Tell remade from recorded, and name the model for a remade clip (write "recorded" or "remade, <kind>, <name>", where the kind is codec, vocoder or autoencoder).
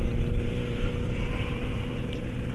recorded